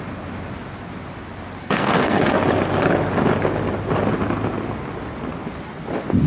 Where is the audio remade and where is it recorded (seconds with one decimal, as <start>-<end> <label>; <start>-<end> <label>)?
0.0-1.6 recorded; 1.6-2.2 remade; 2.2-6.3 recorded